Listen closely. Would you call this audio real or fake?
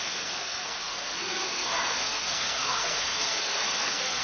fake